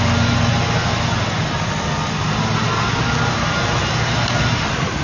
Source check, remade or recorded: recorded